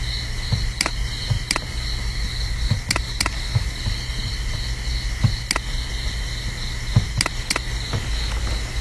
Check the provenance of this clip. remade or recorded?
recorded